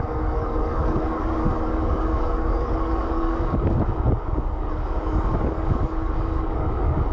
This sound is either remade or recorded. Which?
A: remade